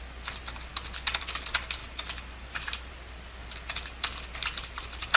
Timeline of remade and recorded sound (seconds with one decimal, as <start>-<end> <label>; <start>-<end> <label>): 0.0-5.2 recorded